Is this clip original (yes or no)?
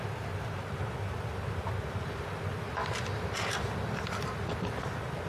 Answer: yes